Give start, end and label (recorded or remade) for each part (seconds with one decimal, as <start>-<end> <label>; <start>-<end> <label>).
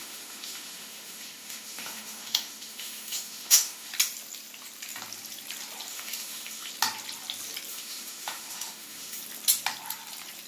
0.0-3.9 remade; 3.9-5.9 recorded; 5.9-6.7 remade; 6.7-7.7 recorded; 7.7-9.2 remade; 9.2-10.5 recorded